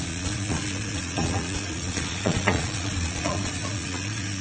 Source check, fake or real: fake